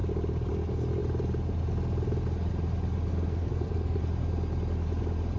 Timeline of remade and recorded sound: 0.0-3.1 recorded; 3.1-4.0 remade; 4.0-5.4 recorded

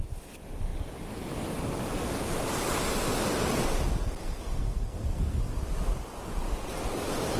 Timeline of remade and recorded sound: 0.0-4.2 recorded; 4.2-5.4 remade; 5.4-7.4 recorded

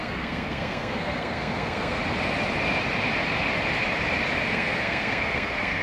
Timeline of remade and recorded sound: 0.0-2.0 remade; 2.0-4.4 recorded; 4.4-5.8 remade

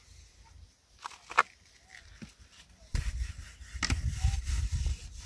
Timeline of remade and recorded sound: 0.0-5.3 recorded